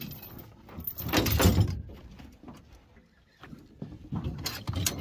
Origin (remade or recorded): recorded